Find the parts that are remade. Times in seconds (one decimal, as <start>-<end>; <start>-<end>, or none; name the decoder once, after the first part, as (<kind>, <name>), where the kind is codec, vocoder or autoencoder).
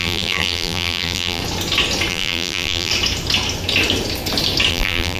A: 0.0-1.4 (vocoder, BigVGAN v2); 2.1-2.9; 4.7-5.2